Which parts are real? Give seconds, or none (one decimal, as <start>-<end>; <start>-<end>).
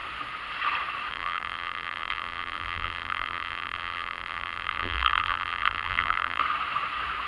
0.0-1.1; 6.4-7.3